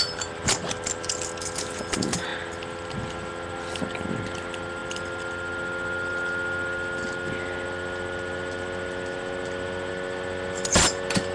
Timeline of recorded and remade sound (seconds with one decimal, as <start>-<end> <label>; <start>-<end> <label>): 0.0-11.3 recorded